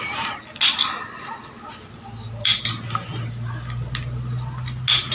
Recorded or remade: recorded